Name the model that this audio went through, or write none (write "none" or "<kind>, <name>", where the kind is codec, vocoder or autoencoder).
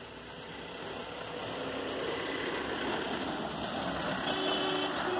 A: none